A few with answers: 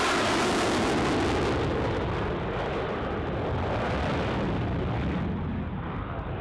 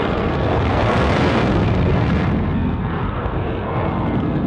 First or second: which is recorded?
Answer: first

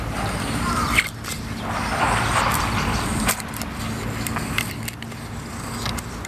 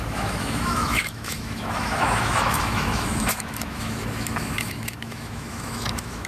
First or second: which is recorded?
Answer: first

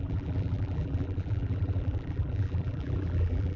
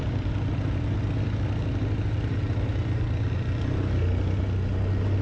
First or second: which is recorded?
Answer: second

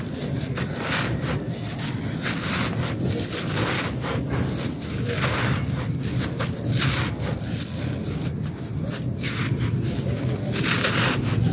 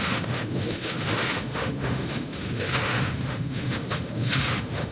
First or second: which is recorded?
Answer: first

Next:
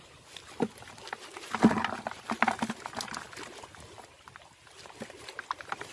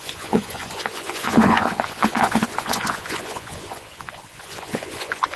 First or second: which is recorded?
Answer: first